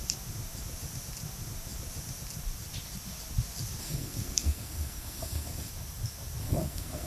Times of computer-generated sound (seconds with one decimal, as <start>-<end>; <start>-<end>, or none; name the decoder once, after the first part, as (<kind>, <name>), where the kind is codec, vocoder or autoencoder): 3.8-5.7 (codec, SNAC); 6.4-7.1